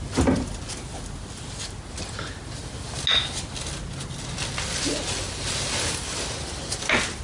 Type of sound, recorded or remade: recorded